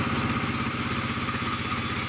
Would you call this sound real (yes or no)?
yes